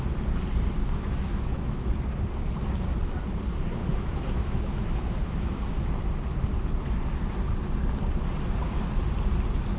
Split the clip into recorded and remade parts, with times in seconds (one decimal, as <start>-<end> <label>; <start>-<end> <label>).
0.0-0.8 recorded; 0.8-1.8 remade; 1.8-3.8 recorded; 3.8-5.7 remade; 5.7-9.8 recorded